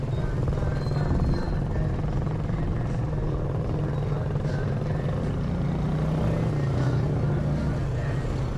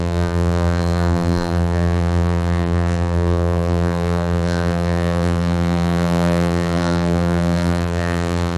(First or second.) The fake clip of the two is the second